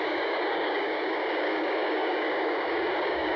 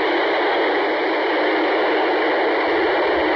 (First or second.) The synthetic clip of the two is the first